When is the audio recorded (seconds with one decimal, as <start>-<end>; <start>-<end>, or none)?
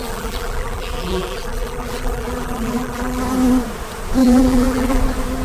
3.2-4.2; 5.0-5.4